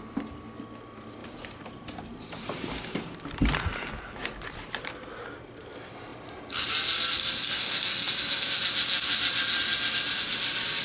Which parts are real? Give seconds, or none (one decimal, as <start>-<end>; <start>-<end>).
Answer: 0.0-1.2; 4.9-10.8